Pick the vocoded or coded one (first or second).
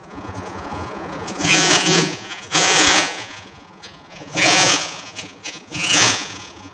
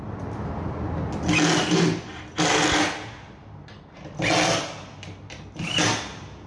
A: first